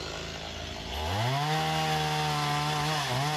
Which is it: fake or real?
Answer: real